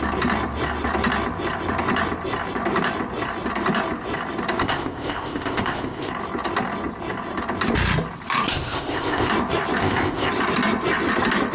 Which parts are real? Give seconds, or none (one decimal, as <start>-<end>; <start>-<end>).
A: 0.0-4.6; 6.1-8.5; 9.3-9.8; 10.3-11.5